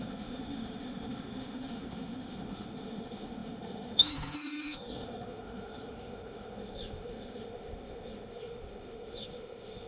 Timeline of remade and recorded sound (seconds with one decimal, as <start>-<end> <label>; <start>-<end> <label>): 0.0-9.9 remade